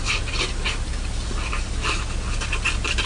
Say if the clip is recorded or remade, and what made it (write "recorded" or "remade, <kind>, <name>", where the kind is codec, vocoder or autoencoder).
recorded